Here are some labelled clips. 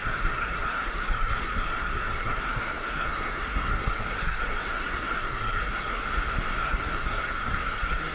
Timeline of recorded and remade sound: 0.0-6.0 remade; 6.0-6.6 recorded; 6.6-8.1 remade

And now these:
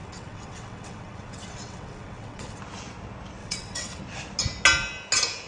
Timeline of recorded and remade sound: 0.0-2.6 remade; 2.6-3.4 recorded; 3.4-4.0 remade; 4.0-5.5 recorded

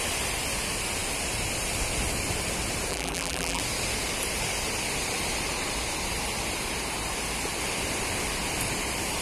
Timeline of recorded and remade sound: 0.0-2.9 recorded; 2.9-3.6 remade; 3.6-9.2 recorded

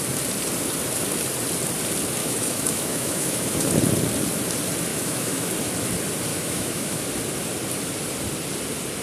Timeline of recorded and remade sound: 0.0-2.2 recorded; 2.2-3.7 remade; 3.7-4.9 recorded; 4.9-5.5 remade; 5.5-6.3 recorded; 6.3-7.0 remade; 7.0-9.0 recorded

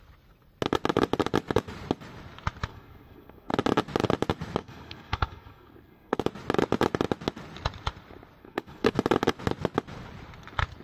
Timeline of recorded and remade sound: 0.0-2.7 recorded; 2.7-3.5 remade; 3.5-4.6 recorded; 4.6-6.2 remade; 6.2-8.4 recorded; 8.4-8.9 remade; 8.9-10.8 recorded